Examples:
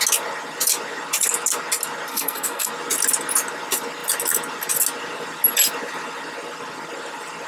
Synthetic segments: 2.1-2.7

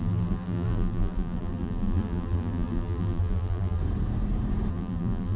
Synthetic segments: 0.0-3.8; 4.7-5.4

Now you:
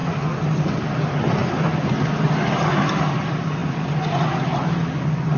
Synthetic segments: none

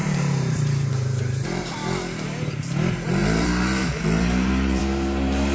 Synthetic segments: 0.0-1.7; 3.2-4.8